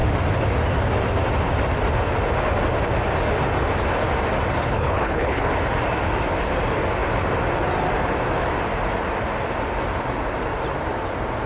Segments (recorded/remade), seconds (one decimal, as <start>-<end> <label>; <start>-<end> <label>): 0.0-4.6 recorded; 4.6-5.5 remade; 5.5-11.5 recorded